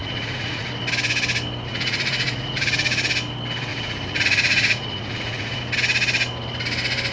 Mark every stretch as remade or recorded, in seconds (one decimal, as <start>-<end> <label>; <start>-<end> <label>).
0.0-0.7 remade; 0.7-1.7 recorded; 1.7-3.1 remade; 3.1-3.7 recorded; 3.7-5.6 remade; 5.6-7.1 recorded

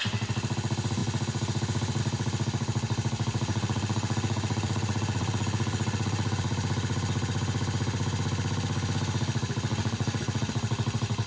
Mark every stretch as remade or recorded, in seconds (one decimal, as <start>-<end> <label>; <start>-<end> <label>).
0.0-3.5 recorded; 3.5-6.4 remade; 6.4-9.7 recorded; 9.7-10.5 remade; 10.5-11.3 recorded

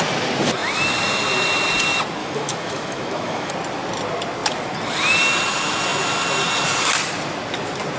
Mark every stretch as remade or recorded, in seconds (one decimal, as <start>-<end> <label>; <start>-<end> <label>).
0.0-2.2 recorded; 2.2-3.5 remade; 3.5-8.0 recorded

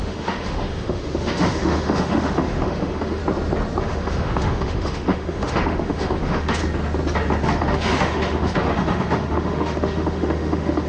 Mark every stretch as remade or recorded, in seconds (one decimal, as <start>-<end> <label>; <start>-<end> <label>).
0.0-3.2 remade; 3.2-3.8 recorded; 3.8-6.6 remade; 6.6-7.4 recorded; 7.4-10.9 remade

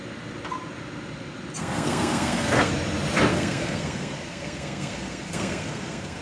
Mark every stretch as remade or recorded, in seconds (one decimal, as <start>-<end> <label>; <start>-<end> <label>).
0.0-1.6 recorded; 1.6-2.7 remade; 2.7-3.3 recorded; 3.3-6.2 remade

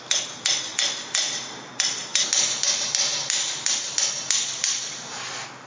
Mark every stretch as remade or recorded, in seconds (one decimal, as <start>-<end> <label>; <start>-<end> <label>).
0.0-5.7 recorded